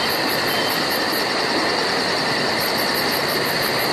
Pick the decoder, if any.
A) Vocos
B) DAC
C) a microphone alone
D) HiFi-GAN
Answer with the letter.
C